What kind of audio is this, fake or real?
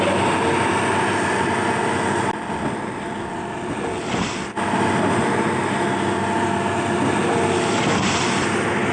real